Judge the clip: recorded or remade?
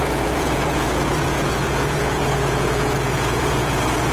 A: remade